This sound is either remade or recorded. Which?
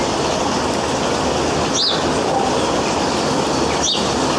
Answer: recorded